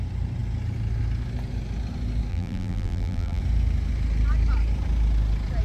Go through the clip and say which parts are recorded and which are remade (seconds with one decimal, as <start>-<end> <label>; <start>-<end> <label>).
0.0-2.3 recorded; 2.3-3.4 remade; 3.4-5.6 recorded